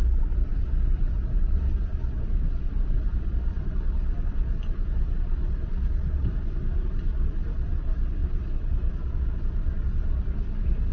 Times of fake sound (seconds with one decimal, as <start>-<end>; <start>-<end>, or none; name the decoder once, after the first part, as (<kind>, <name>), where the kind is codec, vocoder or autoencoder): none